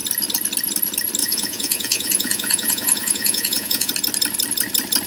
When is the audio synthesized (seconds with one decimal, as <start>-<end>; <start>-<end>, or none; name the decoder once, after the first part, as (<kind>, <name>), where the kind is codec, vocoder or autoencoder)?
1.2-3.9 (vocoder, Vocos)